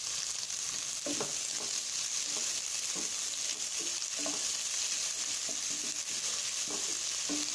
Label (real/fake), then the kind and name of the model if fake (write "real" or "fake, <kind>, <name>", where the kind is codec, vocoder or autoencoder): real